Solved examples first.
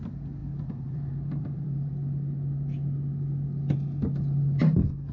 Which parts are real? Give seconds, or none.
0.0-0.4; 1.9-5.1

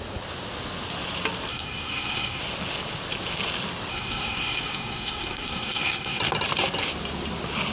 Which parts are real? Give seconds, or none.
0.0-1.5; 2.4-3.9; 6.2-7.7

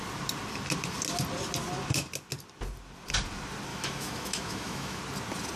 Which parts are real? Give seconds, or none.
0.0-3.7; 5.0-5.6

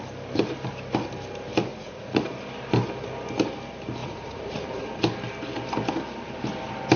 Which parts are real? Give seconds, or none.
0.0-1.7; 2.2-4.0; 5.0-7.0